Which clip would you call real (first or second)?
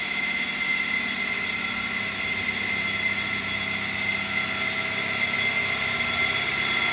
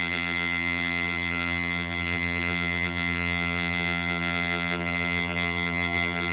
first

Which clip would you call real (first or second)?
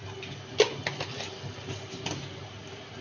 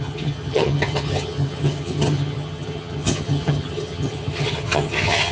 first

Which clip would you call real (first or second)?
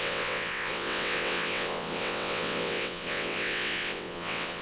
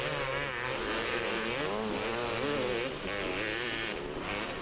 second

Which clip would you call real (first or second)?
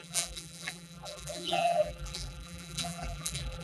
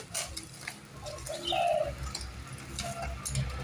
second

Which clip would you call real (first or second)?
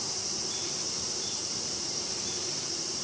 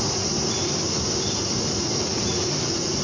second